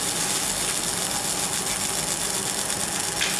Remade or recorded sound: recorded